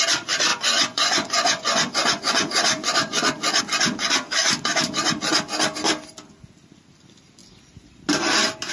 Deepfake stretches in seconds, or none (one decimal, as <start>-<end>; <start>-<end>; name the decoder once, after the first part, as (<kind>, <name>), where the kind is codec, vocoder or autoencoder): 0.5-3.6 (vocoder, Vocos)

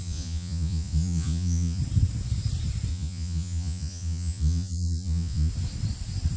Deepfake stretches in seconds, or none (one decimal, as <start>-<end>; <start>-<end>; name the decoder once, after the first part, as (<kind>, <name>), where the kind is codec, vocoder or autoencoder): 0.0-1.8 (vocoder, Vocos); 2.9-5.5

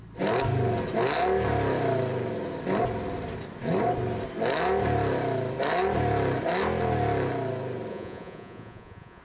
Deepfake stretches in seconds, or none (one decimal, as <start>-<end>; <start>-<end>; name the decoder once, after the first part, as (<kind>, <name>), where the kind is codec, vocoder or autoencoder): 7.9-9.2 (vocoder, Vocos)